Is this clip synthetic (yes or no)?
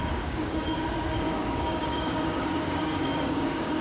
yes